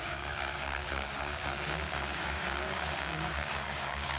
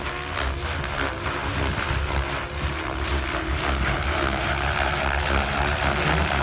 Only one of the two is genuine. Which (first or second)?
second